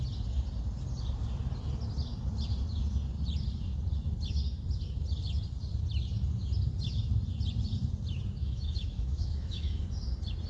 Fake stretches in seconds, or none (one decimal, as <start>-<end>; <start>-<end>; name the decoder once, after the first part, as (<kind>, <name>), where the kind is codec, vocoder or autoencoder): 8.4-9.8 (autoencoder, DAC-VAE)